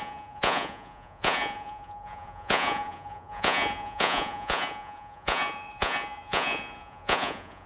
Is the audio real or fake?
fake